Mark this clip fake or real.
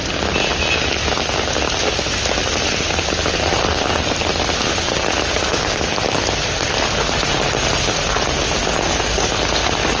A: real